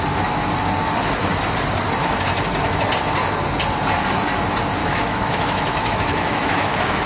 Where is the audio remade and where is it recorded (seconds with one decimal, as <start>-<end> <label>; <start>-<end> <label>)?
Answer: 0.0-4.8 recorded; 4.8-7.1 remade